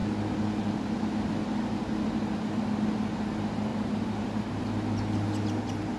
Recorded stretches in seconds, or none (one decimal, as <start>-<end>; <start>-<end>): 0.0-3.7; 4.6-6.0